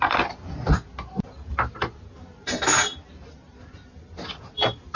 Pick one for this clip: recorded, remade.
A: recorded